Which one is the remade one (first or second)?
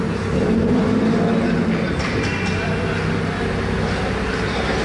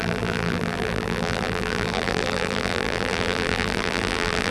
second